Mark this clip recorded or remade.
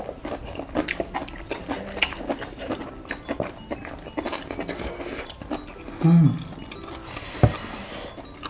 recorded